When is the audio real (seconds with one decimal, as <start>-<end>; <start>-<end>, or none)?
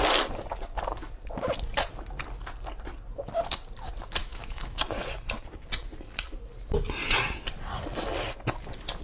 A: 0.0-4.2; 4.8-9.0